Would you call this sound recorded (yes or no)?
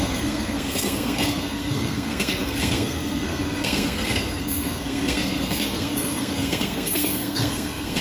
no